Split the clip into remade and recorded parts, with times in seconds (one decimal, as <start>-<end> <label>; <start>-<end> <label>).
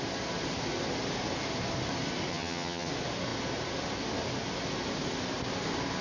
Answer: 0.0-2.3 recorded; 2.3-2.9 remade; 2.9-6.0 recorded